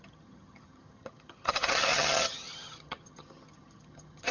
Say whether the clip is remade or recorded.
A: remade